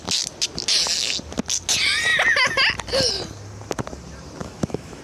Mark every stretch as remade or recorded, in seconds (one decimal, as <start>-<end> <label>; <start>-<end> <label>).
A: 0.0-4.4 recorded; 4.4-5.0 remade